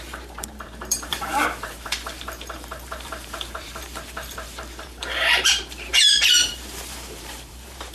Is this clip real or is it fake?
fake